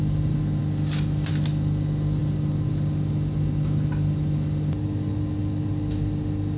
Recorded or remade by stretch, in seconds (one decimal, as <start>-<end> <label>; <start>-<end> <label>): 0.0-6.6 recorded